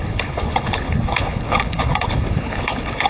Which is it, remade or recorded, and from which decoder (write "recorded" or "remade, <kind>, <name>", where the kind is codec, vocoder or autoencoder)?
remade, codec, HILCodec